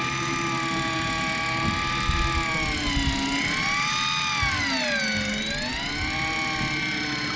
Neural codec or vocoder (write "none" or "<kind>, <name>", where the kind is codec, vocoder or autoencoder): none